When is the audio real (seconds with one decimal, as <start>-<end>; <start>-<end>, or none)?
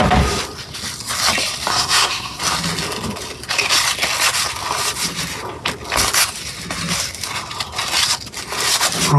0.0-1.7; 2.4-9.2